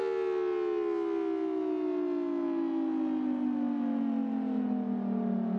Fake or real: real